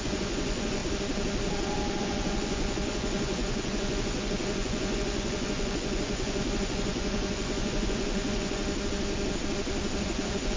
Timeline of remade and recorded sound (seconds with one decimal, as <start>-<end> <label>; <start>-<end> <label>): 0.0-0.8 remade; 0.8-2.0 recorded; 2.0-8.6 remade; 8.6-10.0 recorded; 10.0-10.6 remade